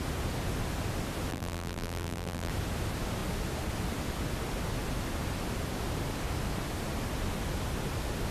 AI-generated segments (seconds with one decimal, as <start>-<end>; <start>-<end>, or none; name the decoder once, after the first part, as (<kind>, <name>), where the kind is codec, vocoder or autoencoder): 1.3-2.5 (vocoder, BigVGAN v2)